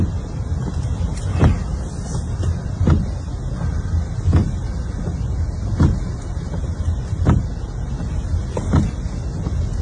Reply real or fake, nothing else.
real